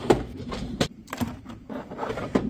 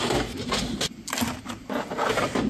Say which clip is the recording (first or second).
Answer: second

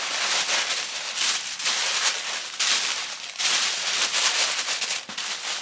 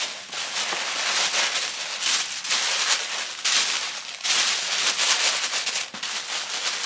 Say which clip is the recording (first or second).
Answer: second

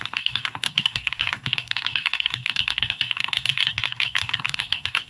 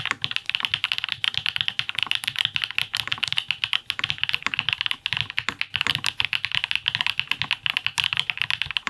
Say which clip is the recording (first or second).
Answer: second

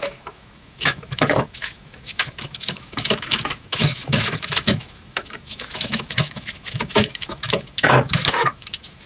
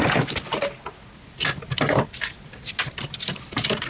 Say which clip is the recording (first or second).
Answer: second